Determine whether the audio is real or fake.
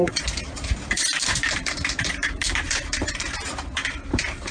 fake